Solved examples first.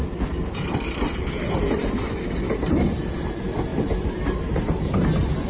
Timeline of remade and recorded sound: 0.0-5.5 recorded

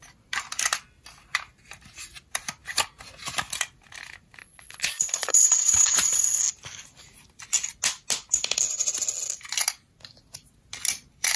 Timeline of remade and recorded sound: 0.0-4.4 recorded; 4.4-6.4 remade; 6.4-11.4 recorded

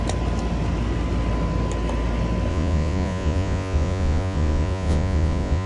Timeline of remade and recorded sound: 0.0-2.5 recorded; 2.5-5.7 remade